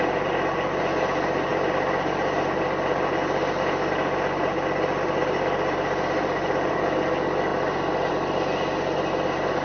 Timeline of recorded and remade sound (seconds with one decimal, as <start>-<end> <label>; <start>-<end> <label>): 0.0-9.6 recorded